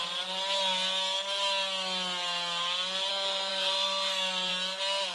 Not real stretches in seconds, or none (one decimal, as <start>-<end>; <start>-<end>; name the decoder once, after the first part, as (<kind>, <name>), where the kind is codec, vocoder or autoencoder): 3.5-4.5 (codec, SNAC)